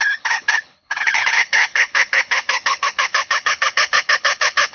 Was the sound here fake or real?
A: fake